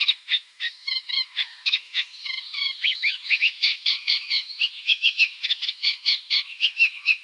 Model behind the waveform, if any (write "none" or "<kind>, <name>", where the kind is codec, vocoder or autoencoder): autoencoder, DAC-VAE